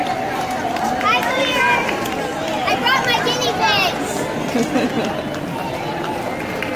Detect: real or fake real